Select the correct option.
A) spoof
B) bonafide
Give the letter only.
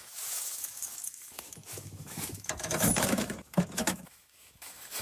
A